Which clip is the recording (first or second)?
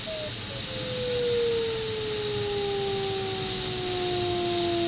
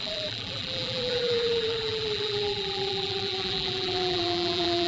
first